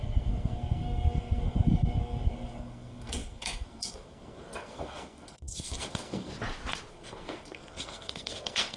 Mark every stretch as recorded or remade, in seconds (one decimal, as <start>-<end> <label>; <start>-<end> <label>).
0.0-6.3 remade; 6.3-6.9 recorded; 6.9-8.8 remade